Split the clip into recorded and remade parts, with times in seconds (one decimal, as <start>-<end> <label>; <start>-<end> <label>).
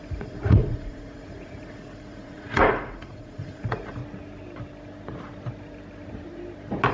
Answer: 0.0-4.0 remade; 4.0-6.9 recorded